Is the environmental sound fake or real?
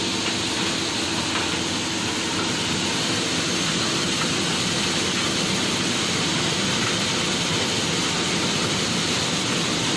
real